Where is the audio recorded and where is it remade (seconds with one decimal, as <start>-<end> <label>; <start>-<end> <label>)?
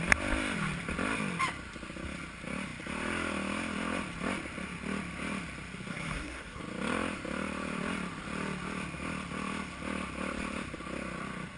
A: 0.0-5.9 recorded; 5.9-6.6 remade; 6.6-11.6 recorded